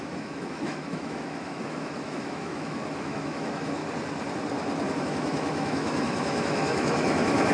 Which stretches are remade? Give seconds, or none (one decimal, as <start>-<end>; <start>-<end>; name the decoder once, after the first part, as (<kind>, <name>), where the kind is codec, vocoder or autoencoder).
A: 0.0-3.8 (autoencoder, DAC-VAE); 5.0-7.5